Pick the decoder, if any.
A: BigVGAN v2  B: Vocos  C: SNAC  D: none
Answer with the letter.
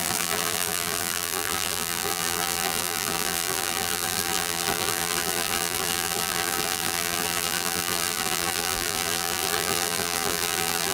A